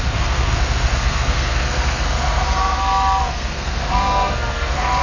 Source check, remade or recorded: remade